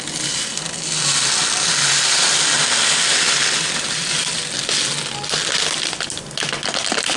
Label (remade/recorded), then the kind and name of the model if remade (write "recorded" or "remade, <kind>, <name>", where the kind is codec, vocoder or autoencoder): recorded